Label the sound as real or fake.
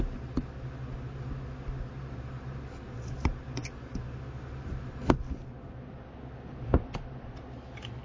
real